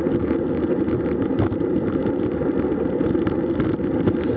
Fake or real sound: real